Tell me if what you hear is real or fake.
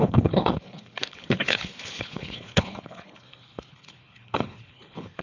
fake